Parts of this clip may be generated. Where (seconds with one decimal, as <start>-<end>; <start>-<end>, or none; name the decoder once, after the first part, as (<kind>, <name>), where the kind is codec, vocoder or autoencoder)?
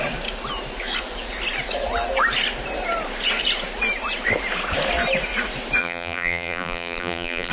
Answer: 5.8-7.5 (vocoder, BigVGAN v2)